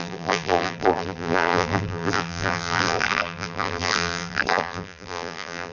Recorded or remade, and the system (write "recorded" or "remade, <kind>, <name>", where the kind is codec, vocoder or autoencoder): remade, vocoder, BigVGAN v2